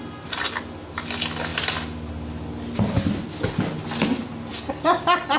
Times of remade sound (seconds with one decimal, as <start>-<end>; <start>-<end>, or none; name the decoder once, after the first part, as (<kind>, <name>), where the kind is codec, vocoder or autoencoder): none